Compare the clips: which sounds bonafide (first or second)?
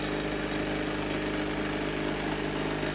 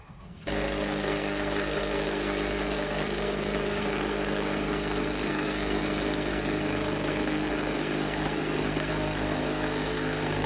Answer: first